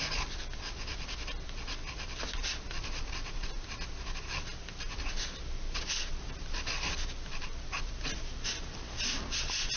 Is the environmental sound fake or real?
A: real